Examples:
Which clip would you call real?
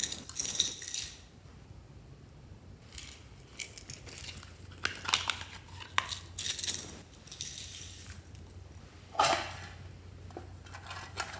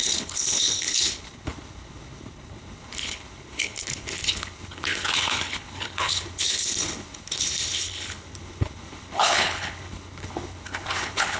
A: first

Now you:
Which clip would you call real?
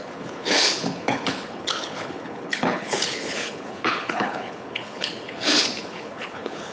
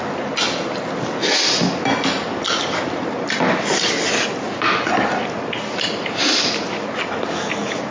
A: second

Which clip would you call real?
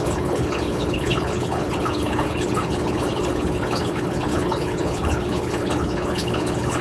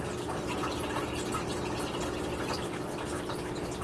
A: second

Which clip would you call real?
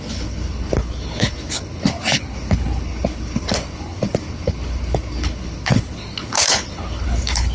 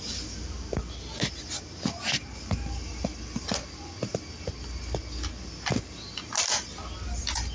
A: second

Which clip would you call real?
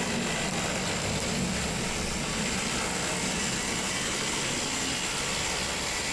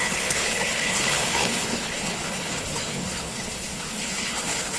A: first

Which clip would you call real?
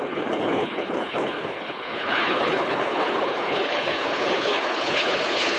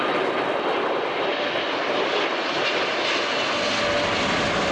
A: second